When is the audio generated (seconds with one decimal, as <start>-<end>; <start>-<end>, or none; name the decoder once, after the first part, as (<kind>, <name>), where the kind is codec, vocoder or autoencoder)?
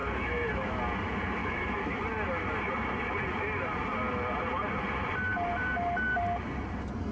0.0-0.8 (autoencoder, DAC-VAE); 1.4-2.0